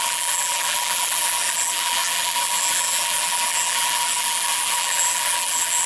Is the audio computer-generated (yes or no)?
yes